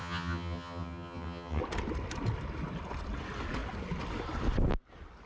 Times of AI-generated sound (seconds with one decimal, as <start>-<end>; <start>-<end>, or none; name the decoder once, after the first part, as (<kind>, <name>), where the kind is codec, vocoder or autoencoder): 0.0-1.6 (vocoder, HiFi-GAN)